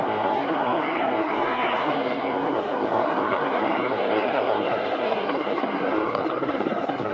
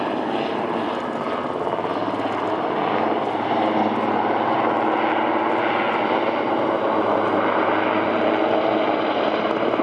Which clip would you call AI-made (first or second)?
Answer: first